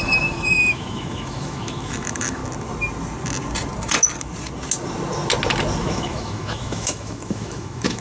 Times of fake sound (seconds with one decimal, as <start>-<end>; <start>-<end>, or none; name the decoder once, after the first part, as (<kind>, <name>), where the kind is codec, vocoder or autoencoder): 0.0-2.4 (autoencoder, DAC-VAE); 5.8-8.0